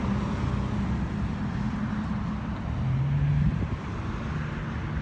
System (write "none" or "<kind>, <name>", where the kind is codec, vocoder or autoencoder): none